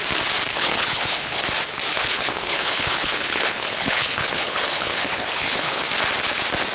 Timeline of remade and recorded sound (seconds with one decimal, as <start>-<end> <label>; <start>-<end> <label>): 0.0-0.5 recorded; 0.5-1.4 remade; 1.4-1.9 recorded; 1.9-5.9 remade; 5.9-6.7 recorded